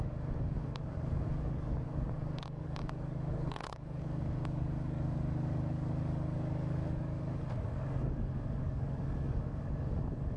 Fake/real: fake